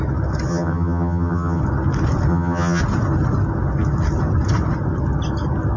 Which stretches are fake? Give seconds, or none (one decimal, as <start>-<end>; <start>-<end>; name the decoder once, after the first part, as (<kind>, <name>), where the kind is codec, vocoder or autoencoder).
0.5-1.6 (vocoder, HiFi-GAN); 2.3-2.8